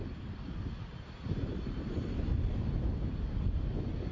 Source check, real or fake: real